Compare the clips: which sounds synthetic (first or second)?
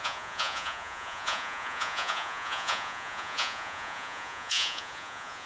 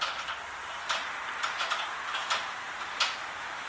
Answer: first